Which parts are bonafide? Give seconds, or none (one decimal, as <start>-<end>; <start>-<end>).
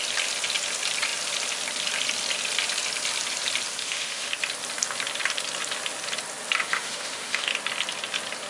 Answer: 0.0-3.8; 4.3-6.6; 7.5-8.5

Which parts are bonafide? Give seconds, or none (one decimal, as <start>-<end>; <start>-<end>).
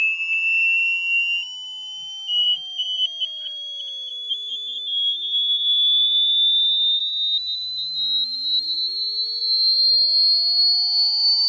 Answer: 0.0-4.1; 7.0-11.5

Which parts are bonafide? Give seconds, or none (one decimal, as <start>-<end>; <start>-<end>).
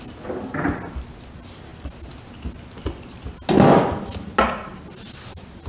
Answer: 0.0-5.7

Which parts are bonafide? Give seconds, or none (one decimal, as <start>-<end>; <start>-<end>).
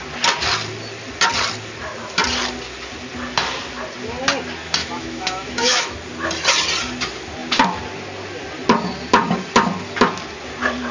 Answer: 0.0-4.8; 5.9-10.9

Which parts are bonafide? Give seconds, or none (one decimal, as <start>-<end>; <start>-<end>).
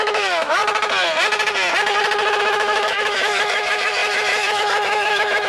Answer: 0.6-2.4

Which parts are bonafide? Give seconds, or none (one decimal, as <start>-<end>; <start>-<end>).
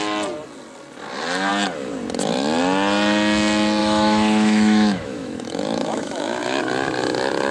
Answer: 0.0-3.8; 6.6-7.5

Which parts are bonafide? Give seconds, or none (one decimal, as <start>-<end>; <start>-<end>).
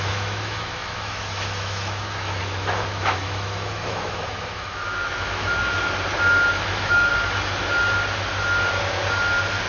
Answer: 5.6-6.5; 7.1-9.7